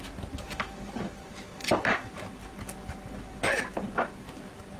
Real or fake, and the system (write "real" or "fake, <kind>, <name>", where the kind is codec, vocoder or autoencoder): fake, vocoder, BigVGAN v2